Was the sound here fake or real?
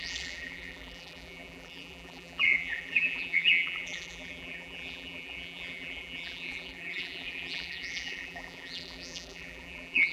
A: fake